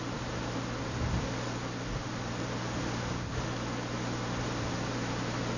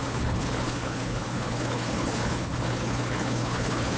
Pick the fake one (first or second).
second